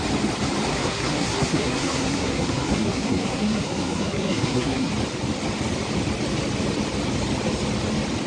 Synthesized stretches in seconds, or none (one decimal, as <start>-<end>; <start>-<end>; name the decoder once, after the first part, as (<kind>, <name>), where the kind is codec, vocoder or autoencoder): 0.7-4.9 (codec, SNAC)